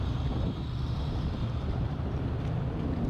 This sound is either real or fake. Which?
fake